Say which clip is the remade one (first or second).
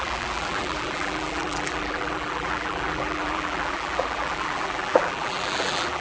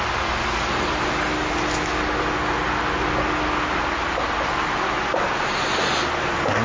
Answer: first